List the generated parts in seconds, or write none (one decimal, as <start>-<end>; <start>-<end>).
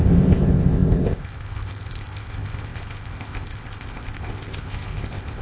0.0-5.4